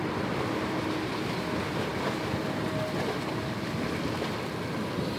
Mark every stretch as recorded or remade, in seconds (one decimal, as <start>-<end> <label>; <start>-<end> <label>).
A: 0.0-5.2 recorded